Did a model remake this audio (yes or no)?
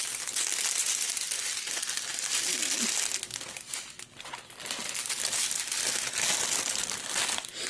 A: no